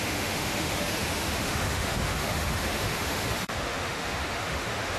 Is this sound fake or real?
fake